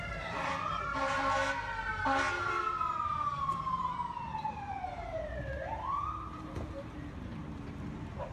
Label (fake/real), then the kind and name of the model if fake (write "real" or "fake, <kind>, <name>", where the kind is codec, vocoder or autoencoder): fake, vocoder, BigVGAN v2